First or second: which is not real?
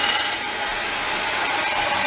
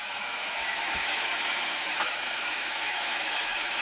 second